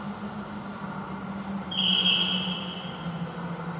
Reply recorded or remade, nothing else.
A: recorded